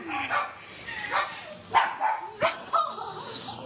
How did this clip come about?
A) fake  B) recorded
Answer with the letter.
B